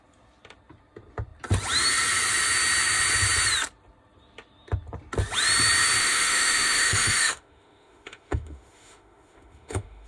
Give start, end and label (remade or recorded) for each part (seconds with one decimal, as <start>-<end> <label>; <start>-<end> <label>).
0.0-6.0 recorded; 6.0-10.1 remade